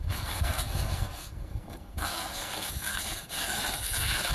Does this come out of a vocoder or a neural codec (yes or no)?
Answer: yes